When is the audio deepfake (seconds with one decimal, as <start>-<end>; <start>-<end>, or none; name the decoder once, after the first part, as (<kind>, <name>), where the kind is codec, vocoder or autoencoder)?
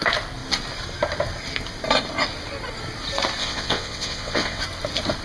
3.4-4.6 (vocoder, WaveNeXt)